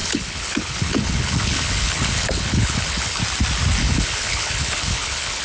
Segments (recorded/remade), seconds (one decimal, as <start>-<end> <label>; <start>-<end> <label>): 0.0-3.2 remade; 3.2-3.8 recorded; 3.8-5.4 remade